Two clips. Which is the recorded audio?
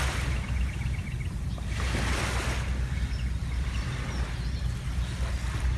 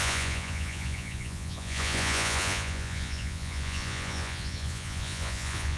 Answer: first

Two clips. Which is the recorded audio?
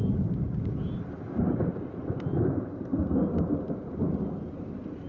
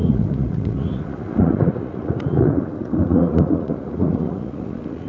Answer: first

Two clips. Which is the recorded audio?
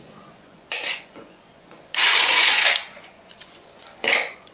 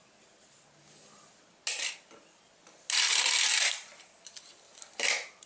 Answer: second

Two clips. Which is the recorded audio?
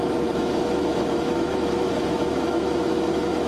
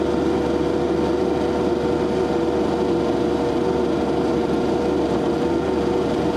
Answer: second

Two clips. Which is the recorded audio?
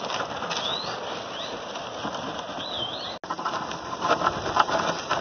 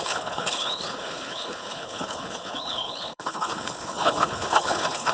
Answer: first